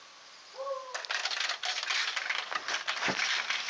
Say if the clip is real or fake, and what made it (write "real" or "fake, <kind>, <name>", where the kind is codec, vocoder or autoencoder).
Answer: real